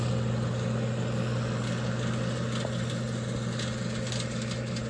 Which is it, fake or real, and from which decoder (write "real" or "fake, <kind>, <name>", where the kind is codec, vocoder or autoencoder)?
real